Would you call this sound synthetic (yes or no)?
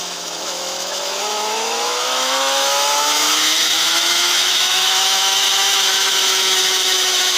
yes